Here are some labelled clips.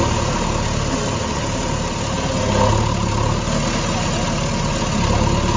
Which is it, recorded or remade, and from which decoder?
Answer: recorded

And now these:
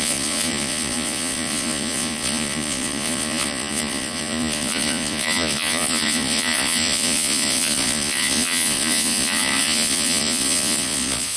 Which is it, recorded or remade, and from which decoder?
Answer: remade, vocoder, Vocos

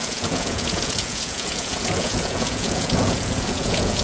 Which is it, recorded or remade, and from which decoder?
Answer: remade, vocoder, Vocos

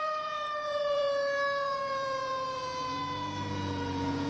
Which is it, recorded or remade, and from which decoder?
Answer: remade, vocoder, Vocos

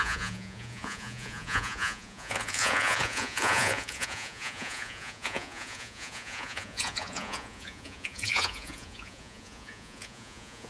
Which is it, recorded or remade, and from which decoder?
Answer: remade, vocoder, Vocos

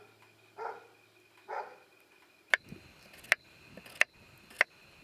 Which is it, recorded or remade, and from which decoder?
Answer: recorded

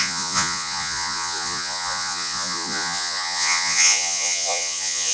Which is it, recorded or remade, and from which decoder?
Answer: remade, vocoder, Vocos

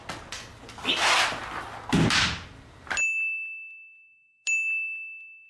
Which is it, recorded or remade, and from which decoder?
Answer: recorded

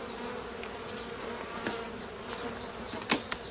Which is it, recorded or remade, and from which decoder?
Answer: recorded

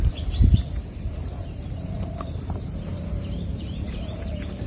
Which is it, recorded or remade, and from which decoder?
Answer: remade, vocoder, BigVGAN v2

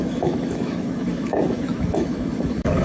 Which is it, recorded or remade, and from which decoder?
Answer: remade, autoencoder, DAC-VAE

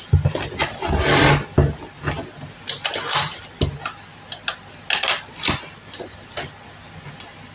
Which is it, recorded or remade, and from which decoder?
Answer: recorded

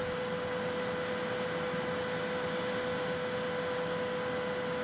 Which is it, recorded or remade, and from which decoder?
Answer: recorded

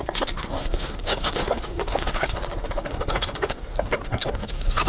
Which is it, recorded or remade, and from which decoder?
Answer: remade, codec, SNAC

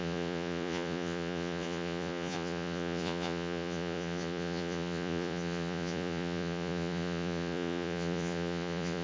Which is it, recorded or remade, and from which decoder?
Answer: remade, vocoder, Vocos